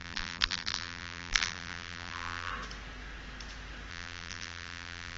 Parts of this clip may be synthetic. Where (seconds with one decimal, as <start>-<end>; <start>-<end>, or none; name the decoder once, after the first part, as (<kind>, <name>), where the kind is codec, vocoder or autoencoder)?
0.0-2.5 (vocoder, BigVGAN v2); 3.9-5.2